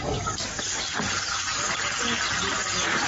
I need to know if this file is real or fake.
real